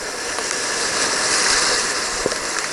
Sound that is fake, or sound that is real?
real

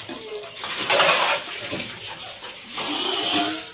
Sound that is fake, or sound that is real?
fake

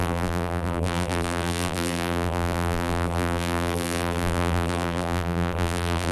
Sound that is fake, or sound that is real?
fake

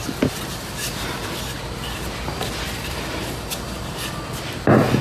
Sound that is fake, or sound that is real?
real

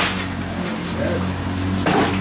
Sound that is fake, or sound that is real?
real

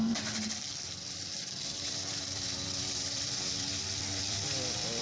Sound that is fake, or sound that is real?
fake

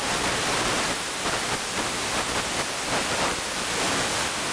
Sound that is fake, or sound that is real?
real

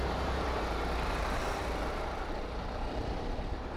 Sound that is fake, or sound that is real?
fake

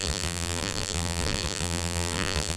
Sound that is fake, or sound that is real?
fake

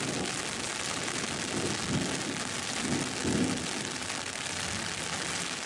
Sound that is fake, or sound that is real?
real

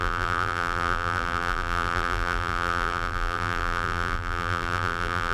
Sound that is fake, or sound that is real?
fake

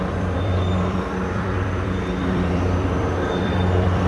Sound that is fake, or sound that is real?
fake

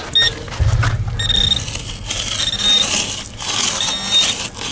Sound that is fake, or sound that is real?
real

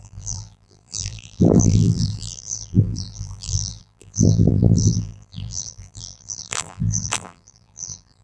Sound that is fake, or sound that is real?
fake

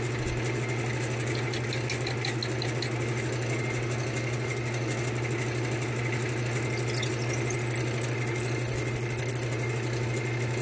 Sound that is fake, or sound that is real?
real